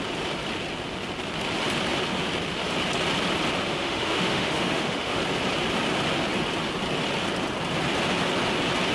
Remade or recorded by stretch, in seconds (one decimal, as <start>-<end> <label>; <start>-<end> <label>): 0.0-3.7 recorded; 3.7-5.2 remade; 5.2-8.9 recorded